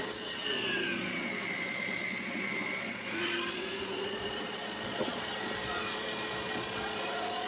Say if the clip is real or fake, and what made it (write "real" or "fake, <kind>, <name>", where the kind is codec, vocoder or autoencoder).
fake, vocoder, Vocos